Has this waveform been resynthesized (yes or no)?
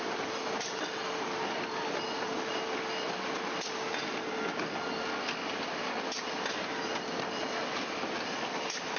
no